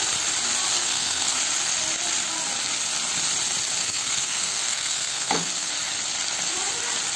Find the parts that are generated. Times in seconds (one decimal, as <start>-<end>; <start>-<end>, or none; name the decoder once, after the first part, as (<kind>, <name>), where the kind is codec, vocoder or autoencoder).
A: 0.7-1.4 (codec, SNAC); 3.8-5.7